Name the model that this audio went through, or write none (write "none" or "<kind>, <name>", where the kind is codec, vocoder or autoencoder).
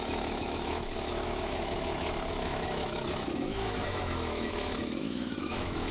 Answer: autoencoder, DAC-VAE